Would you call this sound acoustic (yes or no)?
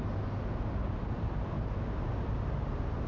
yes